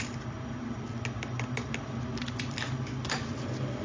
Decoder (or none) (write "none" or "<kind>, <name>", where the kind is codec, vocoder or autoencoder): none